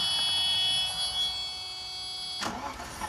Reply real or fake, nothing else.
real